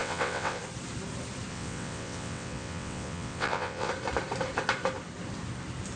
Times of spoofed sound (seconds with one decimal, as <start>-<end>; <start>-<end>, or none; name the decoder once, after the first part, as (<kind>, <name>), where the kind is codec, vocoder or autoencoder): 0.0-0.6 (vocoder, WaveNeXt); 1.5-3.9